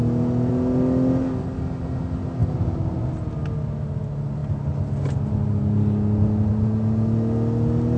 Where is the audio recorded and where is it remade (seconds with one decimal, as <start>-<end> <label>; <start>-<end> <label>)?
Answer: 0.0-8.0 recorded